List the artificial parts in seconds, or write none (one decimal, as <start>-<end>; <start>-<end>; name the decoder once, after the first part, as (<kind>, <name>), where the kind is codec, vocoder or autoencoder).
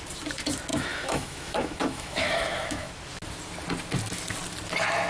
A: 0.7-2.9 (autoencoder, DAC-VAE)